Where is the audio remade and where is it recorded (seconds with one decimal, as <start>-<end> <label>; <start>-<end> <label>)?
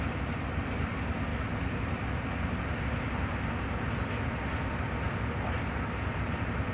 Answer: 0.0-6.7 recorded